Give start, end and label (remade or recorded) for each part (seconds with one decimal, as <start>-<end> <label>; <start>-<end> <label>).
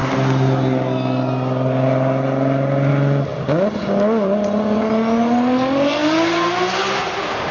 0.0-7.5 recorded